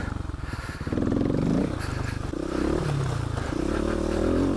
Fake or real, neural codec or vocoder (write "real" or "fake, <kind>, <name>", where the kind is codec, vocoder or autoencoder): real